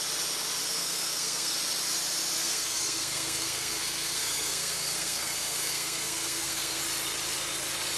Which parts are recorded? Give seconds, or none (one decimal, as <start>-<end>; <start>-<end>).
0.0-0.6; 1.5-2.4; 6.8-8.0